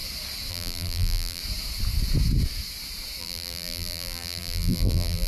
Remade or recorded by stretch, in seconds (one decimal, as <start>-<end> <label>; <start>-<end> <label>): 0.0-0.5 recorded; 0.5-1.4 remade; 1.4-3.2 recorded; 3.2-5.3 remade